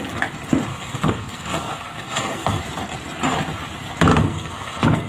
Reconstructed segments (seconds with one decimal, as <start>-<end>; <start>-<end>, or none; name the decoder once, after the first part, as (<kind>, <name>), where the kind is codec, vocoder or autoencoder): 0.7-2.6 (codec, SNAC); 4.1-5.1